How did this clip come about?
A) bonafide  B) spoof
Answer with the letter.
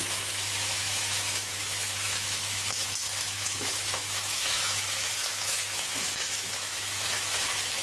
B